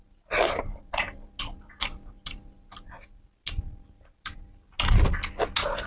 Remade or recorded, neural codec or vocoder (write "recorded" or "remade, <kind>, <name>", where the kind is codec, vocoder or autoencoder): recorded